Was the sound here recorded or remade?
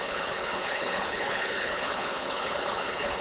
remade